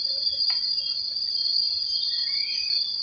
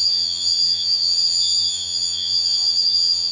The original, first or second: first